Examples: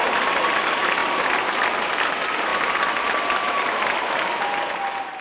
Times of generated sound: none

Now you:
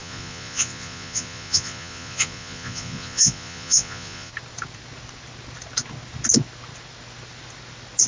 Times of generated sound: 0.0-4.3 (vocoder, Vocos)

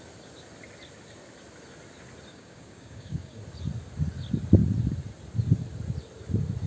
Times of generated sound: 2.3-3.4 (codec, DAC)

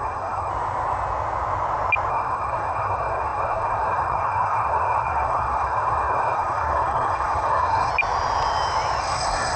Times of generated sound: 0.0-0.5 (codec, SNAC); 2.1-7.9; 9.0-9.6